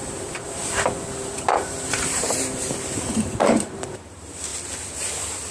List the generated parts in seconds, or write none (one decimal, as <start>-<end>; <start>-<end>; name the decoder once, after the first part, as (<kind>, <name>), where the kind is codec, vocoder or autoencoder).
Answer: 0.0-0.6 (vocoder, BigVGAN v2); 1.2-4.5